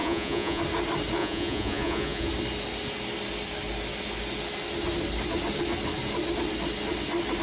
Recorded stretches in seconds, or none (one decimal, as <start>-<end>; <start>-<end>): 0.6-1.2; 2.3-7.4